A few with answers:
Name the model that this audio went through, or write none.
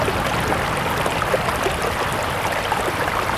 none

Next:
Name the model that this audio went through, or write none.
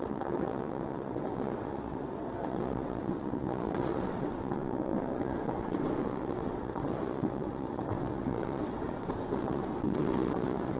vocoder, WaveNeXt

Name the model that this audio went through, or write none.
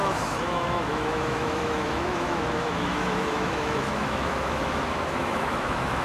autoencoder, DAC-VAE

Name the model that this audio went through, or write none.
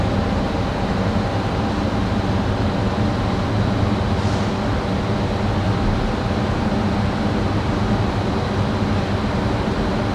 none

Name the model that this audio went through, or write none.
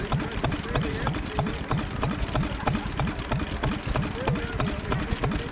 none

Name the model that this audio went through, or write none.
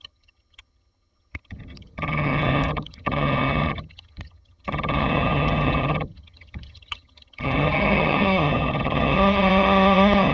vocoder, HiFi-GAN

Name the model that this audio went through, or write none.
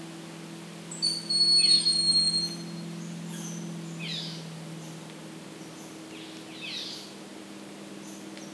none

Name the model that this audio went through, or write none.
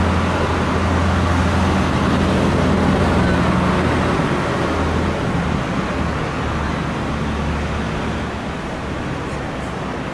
none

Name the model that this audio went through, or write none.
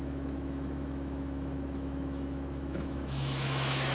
autoencoder, DAC-VAE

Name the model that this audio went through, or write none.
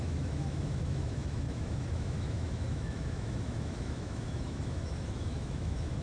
autoencoder, DAC-VAE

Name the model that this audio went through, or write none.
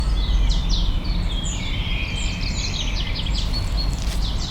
none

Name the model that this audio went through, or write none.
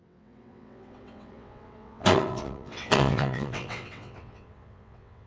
vocoder, WaveNeXt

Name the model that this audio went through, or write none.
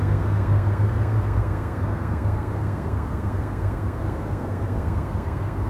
codec, SNAC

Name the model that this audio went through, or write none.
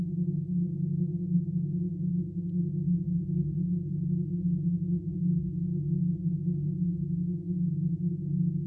none